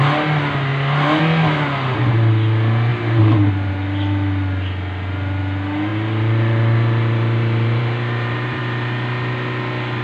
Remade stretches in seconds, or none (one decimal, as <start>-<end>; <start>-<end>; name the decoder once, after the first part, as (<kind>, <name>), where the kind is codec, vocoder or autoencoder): 0.7-1.2 (vocoder, BigVGAN v2); 2.9-3.7; 5.9-8.6